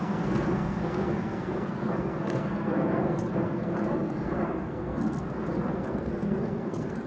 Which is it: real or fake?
fake